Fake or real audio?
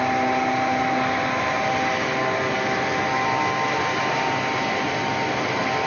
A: real